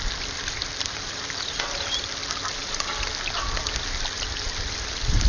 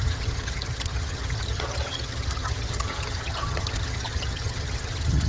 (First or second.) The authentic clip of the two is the first